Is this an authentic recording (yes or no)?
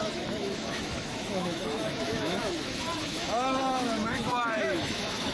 no